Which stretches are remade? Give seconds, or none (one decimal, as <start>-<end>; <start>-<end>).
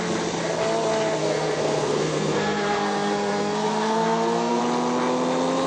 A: 1.2-4.6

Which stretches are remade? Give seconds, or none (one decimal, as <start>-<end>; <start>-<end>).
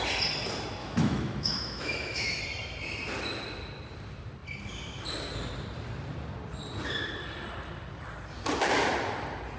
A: 0.8-2.4